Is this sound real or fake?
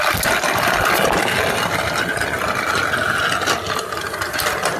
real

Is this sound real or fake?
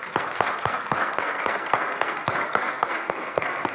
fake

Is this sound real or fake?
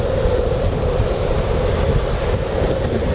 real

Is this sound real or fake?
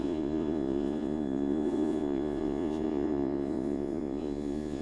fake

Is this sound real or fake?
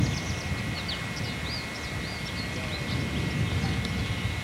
real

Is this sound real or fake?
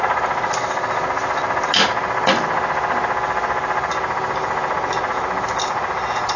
real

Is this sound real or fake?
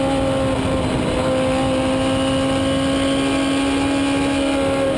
real